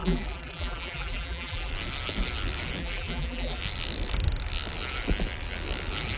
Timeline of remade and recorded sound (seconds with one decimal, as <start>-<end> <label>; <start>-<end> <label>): 0.0-1.7 remade; 1.7-2.8 recorded; 2.8-3.6 remade; 3.6-6.2 recorded